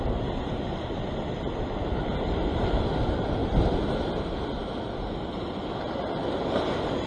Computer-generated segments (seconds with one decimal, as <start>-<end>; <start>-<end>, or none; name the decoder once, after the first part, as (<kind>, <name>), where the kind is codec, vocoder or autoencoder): 0.0-3.4 (vocoder, BigVGAN v2); 4.2-7.1